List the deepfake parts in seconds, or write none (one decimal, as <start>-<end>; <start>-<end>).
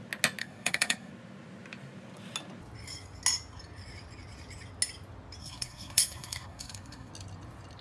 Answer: 0.4-1.1; 5.4-7.1